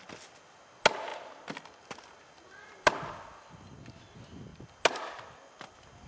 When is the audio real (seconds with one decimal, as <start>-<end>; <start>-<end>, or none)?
0.0-6.1